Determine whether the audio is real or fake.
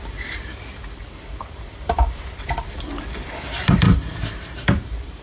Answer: fake